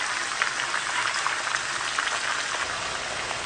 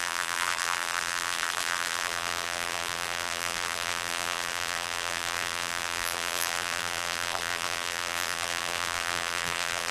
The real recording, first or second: first